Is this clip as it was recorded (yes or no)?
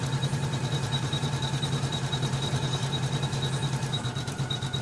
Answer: no